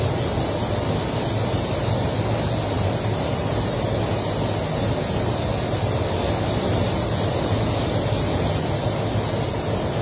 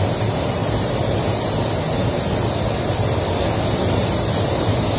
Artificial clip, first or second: second